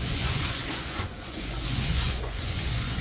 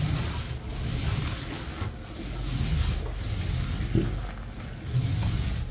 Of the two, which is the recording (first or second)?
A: second